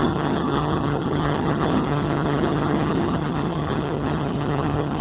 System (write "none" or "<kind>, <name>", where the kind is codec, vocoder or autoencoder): vocoder, HiFi-GAN